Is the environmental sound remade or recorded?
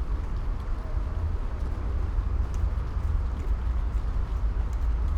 recorded